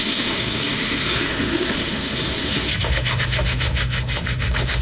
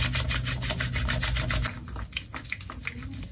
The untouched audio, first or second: second